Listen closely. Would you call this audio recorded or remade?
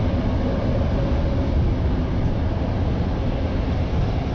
recorded